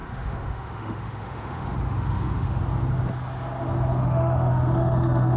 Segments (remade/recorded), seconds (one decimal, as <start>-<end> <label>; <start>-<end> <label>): 0.0-2.6 remade; 2.6-4.0 recorded; 4.0-5.4 remade